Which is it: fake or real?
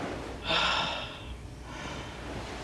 real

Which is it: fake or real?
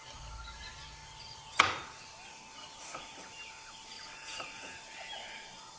real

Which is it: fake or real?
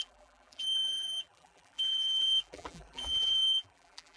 fake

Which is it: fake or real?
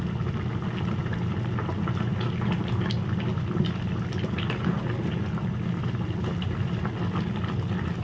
real